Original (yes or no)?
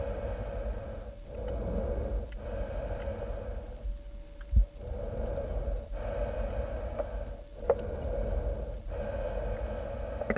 yes